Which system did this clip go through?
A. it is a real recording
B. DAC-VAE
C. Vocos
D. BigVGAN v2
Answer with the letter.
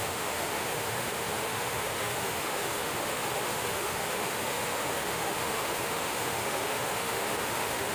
B